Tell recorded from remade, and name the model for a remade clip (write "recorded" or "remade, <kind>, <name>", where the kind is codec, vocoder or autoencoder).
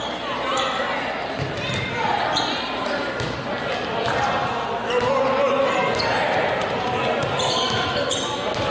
recorded